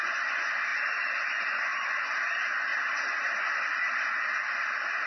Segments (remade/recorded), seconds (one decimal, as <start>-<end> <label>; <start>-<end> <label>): 0.0-2.7 remade; 2.7-5.1 recorded